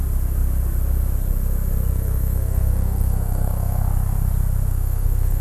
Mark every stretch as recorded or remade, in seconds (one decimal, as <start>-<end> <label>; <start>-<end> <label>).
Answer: 0.0-1.9 recorded; 1.9-3.8 remade; 3.8-4.7 recorded; 4.7-5.4 remade